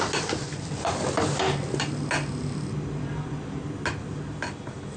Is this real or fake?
real